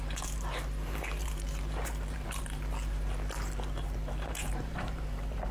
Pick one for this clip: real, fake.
fake